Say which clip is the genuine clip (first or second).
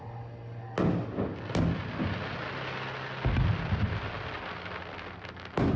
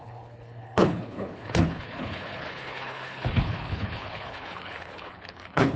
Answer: first